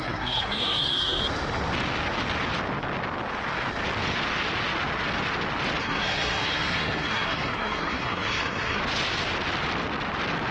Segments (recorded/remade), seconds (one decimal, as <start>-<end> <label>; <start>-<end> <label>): 0.0-1.2 remade; 1.2-5.8 recorded; 5.8-8.8 remade; 8.8-10.5 recorded